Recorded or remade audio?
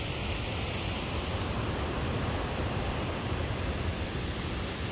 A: recorded